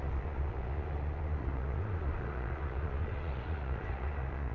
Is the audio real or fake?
fake